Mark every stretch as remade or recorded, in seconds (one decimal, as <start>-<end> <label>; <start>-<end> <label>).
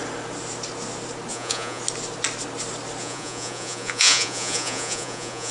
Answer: 0.0-1.3 recorded; 1.3-1.8 remade; 1.8-3.0 recorded; 3.0-5.5 remade